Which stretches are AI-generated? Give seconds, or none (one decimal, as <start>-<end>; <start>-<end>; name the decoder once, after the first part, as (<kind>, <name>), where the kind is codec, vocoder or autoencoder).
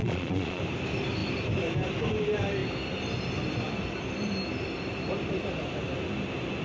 0.0-0.6 (vocoder, Vocos)